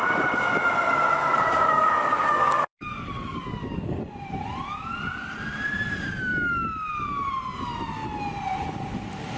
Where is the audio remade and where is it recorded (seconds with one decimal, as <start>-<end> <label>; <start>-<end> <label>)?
0.0-1.2 recorded; 1.2-4.0 remade; 4.0-9.4 recorded